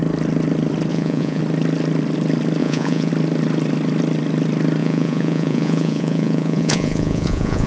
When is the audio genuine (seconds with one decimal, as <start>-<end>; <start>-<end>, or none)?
0.0-0.9; 1.4-2.6; 3.1-4.8